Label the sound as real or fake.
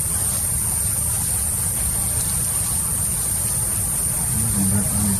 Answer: real